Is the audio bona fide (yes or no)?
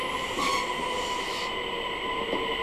yes